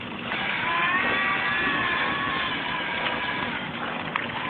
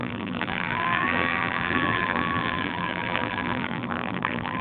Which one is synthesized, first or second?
second